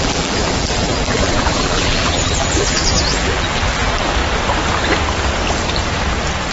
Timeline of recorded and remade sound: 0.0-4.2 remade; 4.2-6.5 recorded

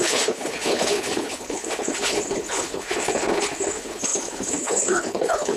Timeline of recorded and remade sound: 0.0-5.6 remade